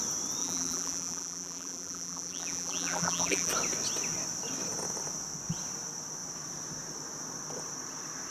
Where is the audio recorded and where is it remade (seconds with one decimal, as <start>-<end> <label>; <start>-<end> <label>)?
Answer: 0.0-0.4 recorded; 0.4-3.5 remade; 3.5-8.3 recorded